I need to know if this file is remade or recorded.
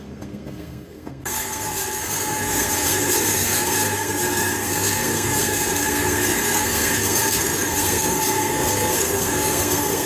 remade